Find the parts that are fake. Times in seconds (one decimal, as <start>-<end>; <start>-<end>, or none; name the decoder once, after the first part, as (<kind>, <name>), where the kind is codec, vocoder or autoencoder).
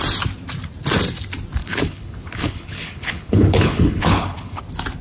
1.6-4.6 (codec, HILCodec)